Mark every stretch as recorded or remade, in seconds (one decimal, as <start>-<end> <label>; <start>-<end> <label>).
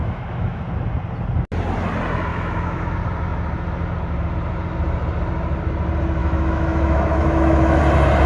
0.0-0.6 remade; 0.6-2.3 recorded; 2.3-2.9 remade; 2.9-6.2 recorded; 6.2-7.8 remade; 7.8-8.3 recorded